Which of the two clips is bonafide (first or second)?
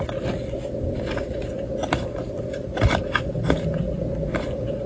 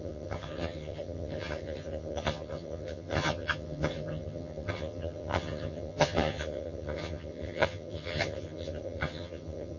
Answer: first